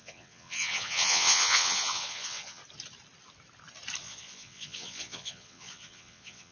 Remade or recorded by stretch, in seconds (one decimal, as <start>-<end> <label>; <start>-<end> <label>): 0.0-2.6 remade; 2.6-4.0 recorded; 4.0-6.5 remade